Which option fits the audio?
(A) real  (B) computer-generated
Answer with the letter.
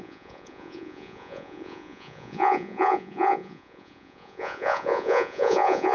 B